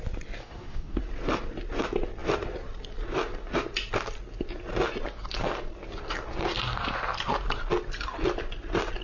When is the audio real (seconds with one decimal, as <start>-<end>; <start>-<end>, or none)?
0.0-0.4; 1.0-9.0